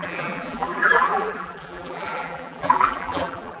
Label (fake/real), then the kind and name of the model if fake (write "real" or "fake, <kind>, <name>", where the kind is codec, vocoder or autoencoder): fake, vocoder, BigVGAN v2